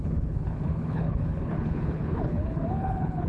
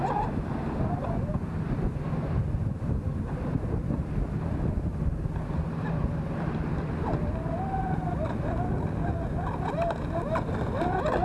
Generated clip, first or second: first